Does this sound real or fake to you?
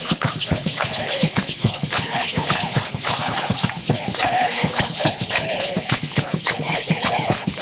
fake